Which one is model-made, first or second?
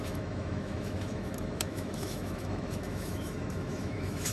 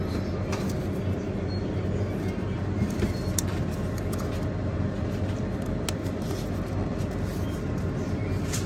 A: first